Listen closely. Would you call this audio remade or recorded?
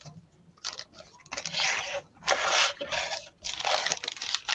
recorded